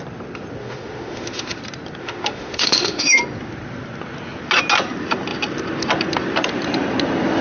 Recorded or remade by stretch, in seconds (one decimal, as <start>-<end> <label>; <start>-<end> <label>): 0.0-0.6 recorded; 0.6-1.6 remade; 1.6-2.0 recorded; 2.0-3.2 remade; 3.2-7.4 recorded